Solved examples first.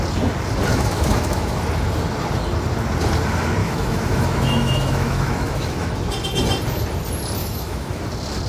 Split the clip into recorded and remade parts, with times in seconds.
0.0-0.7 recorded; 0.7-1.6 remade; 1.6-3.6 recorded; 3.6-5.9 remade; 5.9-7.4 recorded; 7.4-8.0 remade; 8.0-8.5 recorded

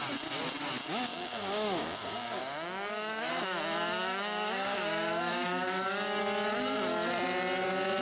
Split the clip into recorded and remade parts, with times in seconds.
0.0-1.1 recorded; 1.1-3.3 remade; 3.3-4.0 recorded; 4.0-6.2 remade; 6.2-8.0 recorded